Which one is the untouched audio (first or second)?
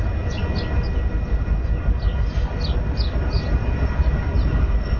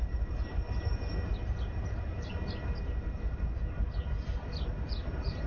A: first